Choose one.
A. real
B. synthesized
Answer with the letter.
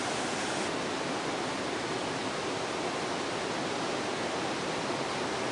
A